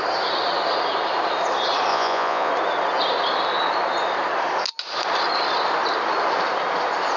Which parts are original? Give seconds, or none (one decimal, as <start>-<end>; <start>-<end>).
0.0-1.9; 2.5-7.2